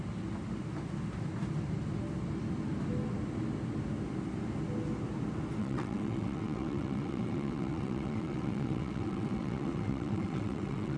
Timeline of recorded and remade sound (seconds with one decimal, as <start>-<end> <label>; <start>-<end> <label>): 0.0-5.6 recorded; 5.6-11.0 remade